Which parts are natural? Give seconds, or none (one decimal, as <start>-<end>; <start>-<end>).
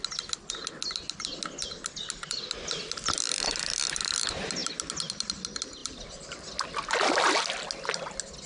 0.0-8.5